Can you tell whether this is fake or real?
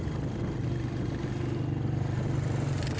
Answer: real